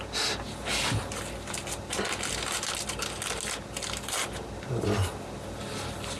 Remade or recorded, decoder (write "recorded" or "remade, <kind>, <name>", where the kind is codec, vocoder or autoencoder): recorded